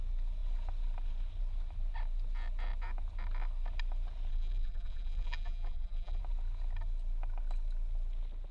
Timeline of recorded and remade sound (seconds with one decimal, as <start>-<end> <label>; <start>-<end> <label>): 0.0-4.3 recorded; 4.3-6.2 remade; 6.2-8.5 recorded